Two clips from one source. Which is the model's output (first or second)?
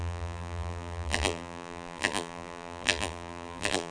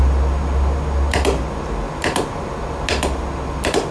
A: first